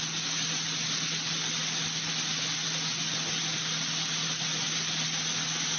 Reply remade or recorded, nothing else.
recorded